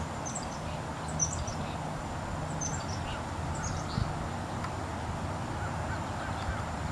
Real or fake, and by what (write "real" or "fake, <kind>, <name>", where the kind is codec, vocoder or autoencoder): real